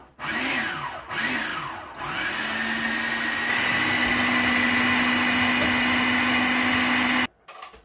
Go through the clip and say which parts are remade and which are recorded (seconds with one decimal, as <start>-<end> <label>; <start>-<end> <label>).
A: 0.0-7.8 recorded